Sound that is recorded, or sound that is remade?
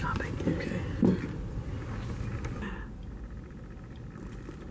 recorded